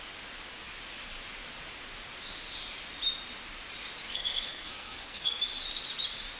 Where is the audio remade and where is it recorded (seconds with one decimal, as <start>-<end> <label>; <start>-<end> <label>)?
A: 0.0-4.1 recorded; 4.1-5.4 remade; 5.4-6.4 recorded